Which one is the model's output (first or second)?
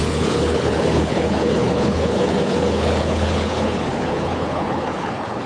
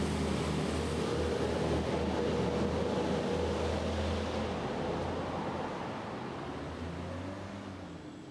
first